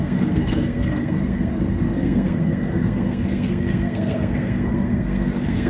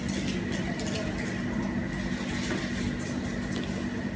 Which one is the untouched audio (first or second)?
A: second